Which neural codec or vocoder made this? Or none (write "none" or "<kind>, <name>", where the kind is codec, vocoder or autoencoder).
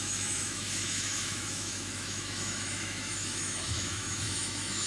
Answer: autoencoder, DAC-VAE